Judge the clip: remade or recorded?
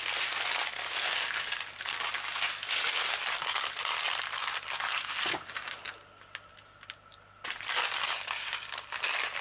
recorded